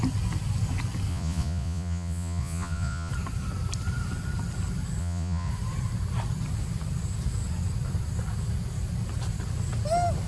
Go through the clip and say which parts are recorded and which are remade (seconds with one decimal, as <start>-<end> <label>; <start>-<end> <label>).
0.0-1.1 recorded; 1.1-3.1 remade; 3.1-5.0 recorded; 5.0-5.5 remade; 5.5-10.3 recorded